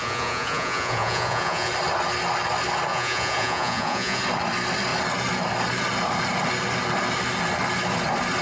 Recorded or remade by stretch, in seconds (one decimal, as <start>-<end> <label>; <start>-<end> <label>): 0.0-1.7 remade; 1.7-2.9 recorded; 2.9-4.2 remade; 4.2-8.4 recorded